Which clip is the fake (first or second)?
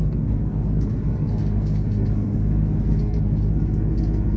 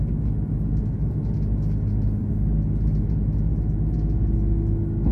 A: first